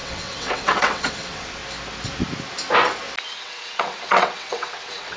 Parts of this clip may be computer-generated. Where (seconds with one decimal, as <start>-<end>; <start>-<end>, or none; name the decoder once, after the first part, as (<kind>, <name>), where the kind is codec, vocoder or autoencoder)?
0.0-1.6 (vocoder, WaveNeXt); 3.4-5.2